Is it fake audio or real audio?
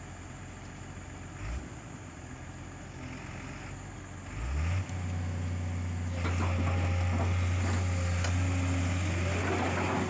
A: real